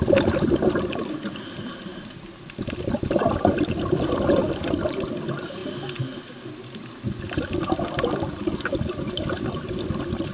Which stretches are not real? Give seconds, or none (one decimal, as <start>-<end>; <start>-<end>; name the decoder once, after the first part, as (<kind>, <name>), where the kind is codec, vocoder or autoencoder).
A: 0.0-5.6 (vocoder, BigVGAN v2); 9.8-10.3

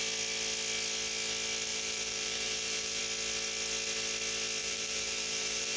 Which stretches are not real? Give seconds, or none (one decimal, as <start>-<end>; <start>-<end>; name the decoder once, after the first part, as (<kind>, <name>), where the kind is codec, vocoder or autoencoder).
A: 1.7-3.0 (vocoder, BigVGAN v2); 4.6-5.8

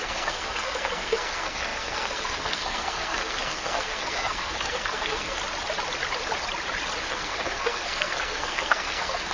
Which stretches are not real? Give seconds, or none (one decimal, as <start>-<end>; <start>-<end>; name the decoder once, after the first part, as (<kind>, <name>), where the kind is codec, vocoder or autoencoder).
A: 0.0-5.4 (codec, SNAC); 7.0-9.3

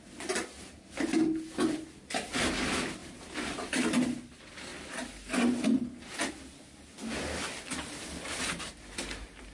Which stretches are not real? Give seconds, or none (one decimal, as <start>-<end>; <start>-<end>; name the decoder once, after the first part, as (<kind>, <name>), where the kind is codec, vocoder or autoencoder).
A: 3.0-4.0 (vocoder, BigVGAN v2)

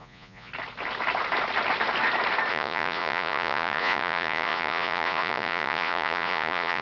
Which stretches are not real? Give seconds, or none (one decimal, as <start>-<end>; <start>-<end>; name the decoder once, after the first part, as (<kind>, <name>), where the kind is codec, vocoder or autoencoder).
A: 0.0-0.5 (vocoder, Vocos); 2.5-6.8

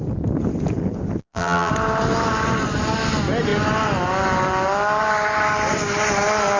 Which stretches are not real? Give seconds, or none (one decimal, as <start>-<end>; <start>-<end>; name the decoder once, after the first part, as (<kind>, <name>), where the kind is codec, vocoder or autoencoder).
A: 1.2-1.7 (vocoder, BigVGAN v2)

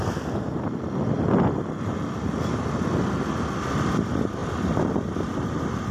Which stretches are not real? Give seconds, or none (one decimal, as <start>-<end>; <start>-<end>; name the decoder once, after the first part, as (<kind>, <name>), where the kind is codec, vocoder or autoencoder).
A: none

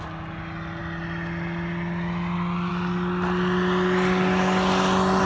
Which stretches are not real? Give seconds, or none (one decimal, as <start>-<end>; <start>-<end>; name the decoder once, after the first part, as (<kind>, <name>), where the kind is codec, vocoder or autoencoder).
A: none